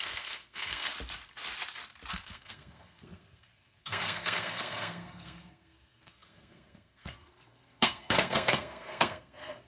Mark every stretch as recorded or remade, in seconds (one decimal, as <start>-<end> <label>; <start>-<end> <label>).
0.0-0.9 remade; 0.9-2.1 recorded; 2.1-9.7 remade